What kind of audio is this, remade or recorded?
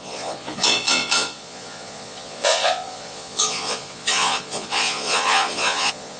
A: remade